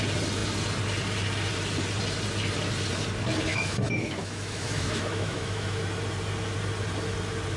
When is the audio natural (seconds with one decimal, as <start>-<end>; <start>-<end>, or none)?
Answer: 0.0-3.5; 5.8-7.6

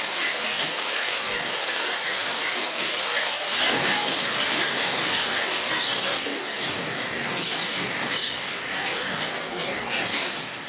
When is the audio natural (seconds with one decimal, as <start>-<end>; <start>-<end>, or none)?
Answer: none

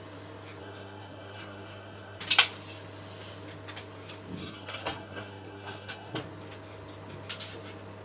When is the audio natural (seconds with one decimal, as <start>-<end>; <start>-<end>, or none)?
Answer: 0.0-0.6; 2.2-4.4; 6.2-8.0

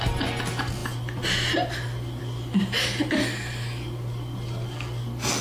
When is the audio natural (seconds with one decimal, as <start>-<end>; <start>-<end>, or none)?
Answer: 0.0-5.4

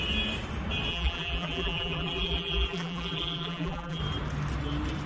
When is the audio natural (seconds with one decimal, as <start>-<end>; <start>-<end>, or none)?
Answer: 0.0-0.9; 4.0-5.1